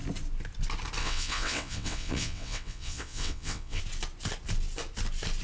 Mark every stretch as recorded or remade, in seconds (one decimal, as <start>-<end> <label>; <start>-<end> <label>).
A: 0.0-1.0 recorded; 1.0-3.8 remade; 3.8-5.4 recorded